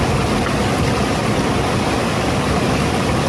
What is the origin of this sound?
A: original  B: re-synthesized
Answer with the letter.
A